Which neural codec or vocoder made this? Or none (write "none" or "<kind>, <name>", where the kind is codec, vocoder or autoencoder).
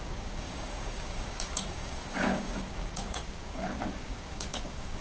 codec, DAC